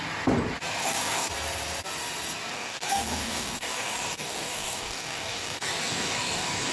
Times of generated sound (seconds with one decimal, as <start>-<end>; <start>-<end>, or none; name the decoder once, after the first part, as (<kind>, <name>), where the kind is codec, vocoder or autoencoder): 0.8-1.3 (codec, DAC); 2.5-6.7